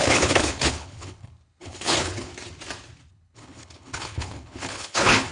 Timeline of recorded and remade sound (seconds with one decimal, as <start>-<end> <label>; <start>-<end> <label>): 0.0-2.3 remade; 2.3-3.1 recorded; 3.1-5.3 remade

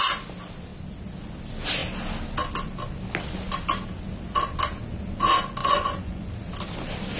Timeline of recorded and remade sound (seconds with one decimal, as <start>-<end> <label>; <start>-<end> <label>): 0.0-5.6 recorded; 5.6-6.3 remade; 6.3-7.2 recorded

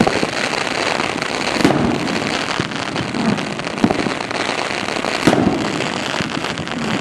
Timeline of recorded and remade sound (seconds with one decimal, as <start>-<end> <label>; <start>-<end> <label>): 0.0-7.0 recorded

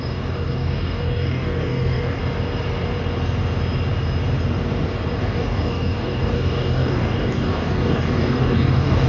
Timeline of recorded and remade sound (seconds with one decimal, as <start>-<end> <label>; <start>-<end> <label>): 0.0-2.2 remade; 2.2-5.2 recorded; 5.2-9.1 remade

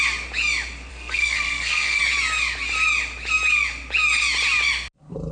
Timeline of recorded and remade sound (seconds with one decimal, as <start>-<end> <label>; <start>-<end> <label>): 0.0-0.9 recorded; 0.9-2.0 remade; 2.0-5.3 recorded

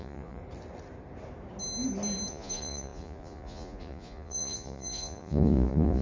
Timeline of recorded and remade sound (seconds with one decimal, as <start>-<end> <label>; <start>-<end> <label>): 0.0-0.4 remade; 0.4-2.3 recorded; 2.3-6.0 remade

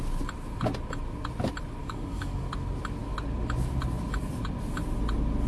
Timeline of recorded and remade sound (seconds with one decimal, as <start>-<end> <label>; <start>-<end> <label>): 0.0-1.8 recorded; 1.8-2.4 remade; 2.4-5.5 recorded